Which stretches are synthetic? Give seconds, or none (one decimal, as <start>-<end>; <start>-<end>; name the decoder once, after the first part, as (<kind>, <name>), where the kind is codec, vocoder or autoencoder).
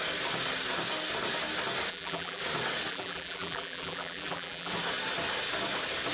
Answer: 1.9-2.4 (vocoder, BigVGAN v2); 2.9-4.7